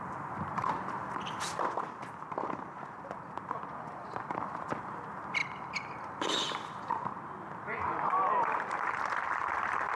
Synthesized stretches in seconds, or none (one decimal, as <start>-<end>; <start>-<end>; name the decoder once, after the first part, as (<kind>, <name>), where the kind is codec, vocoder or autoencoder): 0.0-1.0 (vocoder, BigVGAN v2); 2.0-5.4; 6.2-10.0